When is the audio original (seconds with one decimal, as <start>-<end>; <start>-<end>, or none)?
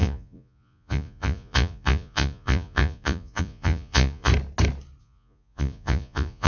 4.3-5.0